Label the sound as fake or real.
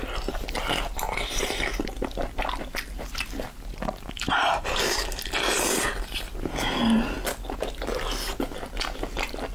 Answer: real